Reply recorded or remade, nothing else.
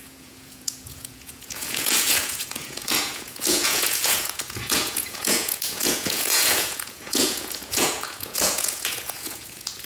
remade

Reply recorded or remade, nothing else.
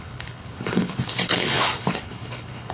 remade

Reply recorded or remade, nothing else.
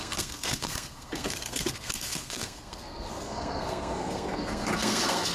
remade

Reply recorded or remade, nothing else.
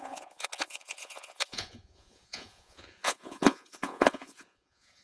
remade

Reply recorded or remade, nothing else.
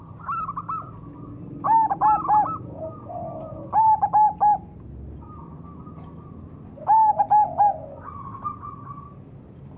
recorded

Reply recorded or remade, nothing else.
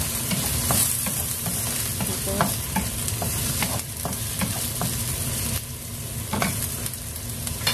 remade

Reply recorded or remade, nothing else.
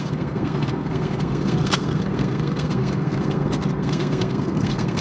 remade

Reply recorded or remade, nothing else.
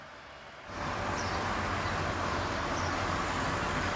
recorded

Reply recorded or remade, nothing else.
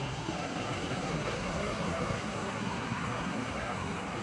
remade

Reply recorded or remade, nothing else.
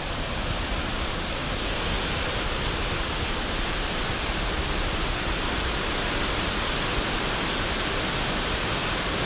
recorded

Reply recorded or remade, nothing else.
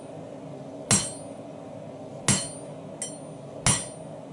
recorded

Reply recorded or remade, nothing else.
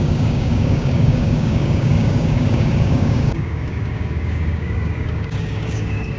remade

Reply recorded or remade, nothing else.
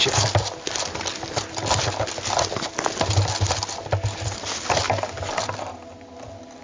recorded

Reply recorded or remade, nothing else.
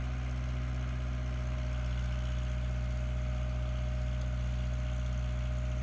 recorded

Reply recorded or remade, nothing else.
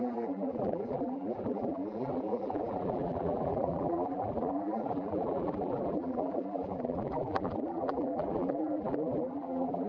remade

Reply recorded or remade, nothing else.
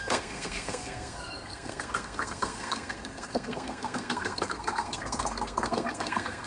remade